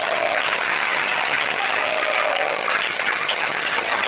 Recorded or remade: remade